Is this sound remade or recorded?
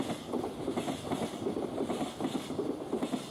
recorded